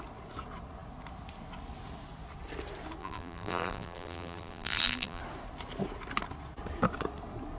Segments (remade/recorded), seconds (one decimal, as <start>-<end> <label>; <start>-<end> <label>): 0.0-3.0 recorded; 3.0-5.2 remade; 5.2-7.6 recorded

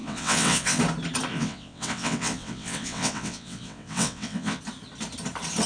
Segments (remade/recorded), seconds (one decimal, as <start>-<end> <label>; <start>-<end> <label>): 0.0-0.8 remade; 0.8-1.3 recorded; 1.3-4.6 remade; 4.6-5.7 recorded

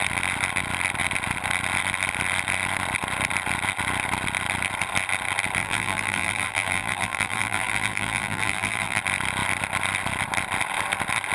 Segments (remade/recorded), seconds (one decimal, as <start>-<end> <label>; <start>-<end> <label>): 0.0-5.6 recorded; 5.6-9.0 remade; 9.0-11.3 recorded

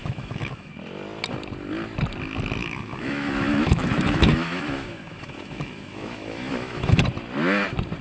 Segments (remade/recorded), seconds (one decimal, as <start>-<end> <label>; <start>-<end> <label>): 0.0-0.7 remade; 0.7-2.6 recorded; 2.6-7.0 remade; 7.0-8.0 recorded

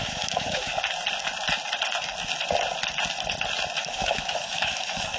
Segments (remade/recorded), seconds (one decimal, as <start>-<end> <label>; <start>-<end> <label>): 0.0-0.7 remade; 0.7-3.8 recorded; 3.8-5.2 remade

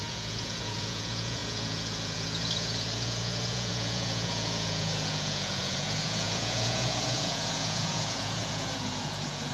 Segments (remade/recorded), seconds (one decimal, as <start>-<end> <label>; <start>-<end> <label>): 0.0-9.5 remade

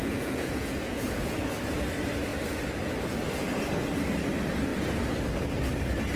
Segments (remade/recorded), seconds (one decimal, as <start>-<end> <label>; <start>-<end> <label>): 0.0-1.5 remade; 1.5-6.2 recorded

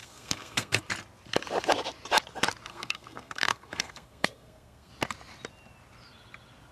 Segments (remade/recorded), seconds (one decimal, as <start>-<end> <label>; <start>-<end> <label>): 0.0-0.8 remade; 0.8-2.7 recorded; 2.7-4.9 remade; 4.9-6.7 recorded